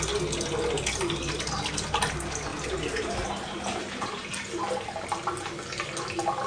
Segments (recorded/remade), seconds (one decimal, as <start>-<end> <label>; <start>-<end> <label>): 0.0-6.5 recorded